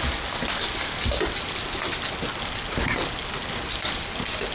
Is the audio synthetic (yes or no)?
no